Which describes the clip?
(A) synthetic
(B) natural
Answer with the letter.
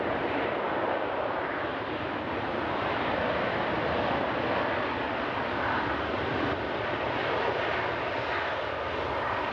B